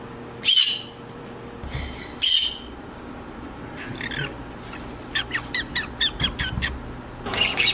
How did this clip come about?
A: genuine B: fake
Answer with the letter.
B